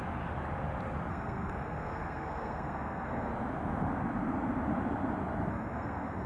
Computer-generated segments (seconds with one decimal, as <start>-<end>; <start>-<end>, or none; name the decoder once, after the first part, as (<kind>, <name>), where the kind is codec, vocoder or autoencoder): 1.1-3.3 (codec, SNAC); 5.5-6.3